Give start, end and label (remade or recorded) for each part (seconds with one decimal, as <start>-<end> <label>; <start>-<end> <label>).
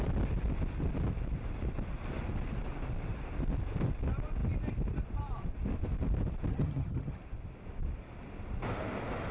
0.0-6.5 recorded; 6.5-7.2 remade; 7.2-9.3 recorded